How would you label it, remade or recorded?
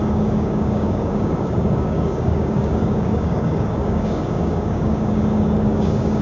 remade